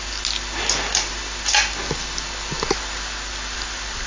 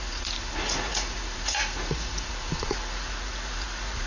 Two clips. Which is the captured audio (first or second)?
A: first